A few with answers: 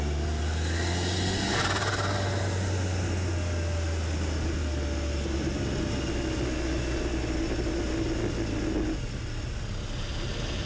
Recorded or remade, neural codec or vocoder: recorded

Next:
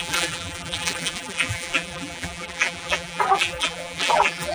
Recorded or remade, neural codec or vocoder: remade, vocoder, BigVGAN v2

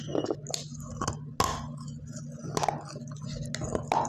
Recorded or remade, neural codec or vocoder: recorded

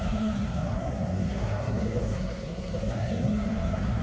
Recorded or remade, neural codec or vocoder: remade, codec, SNAC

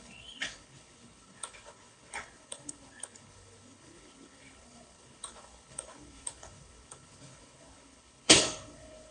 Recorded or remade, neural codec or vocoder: remade, codec, HILCodec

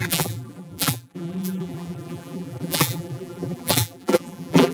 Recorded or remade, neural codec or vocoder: remade, vocoder, BigVGAN v2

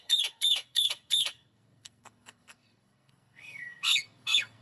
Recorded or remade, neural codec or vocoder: remade, codec, SNAC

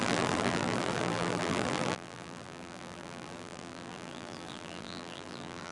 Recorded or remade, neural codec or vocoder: remade, vocoder, BigVGAN v2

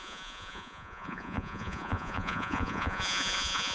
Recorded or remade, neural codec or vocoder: remade, vocoder, Vocos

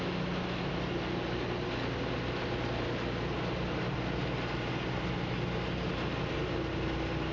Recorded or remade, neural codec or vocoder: recorded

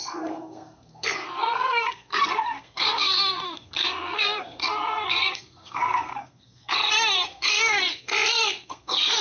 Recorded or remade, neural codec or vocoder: remade, codec, SNAC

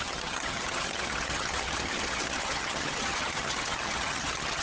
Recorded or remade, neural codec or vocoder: remade, vocoder, HiFi-GAN